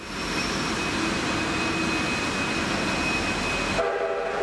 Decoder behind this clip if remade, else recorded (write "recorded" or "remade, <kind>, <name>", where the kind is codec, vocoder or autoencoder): recorded